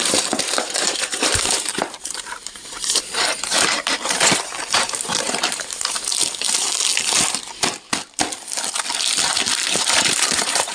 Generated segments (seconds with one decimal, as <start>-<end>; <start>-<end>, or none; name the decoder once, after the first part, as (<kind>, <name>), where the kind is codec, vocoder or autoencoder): 0.0-6.1 (vocoder, BigVGAN v2); 9.8-10.7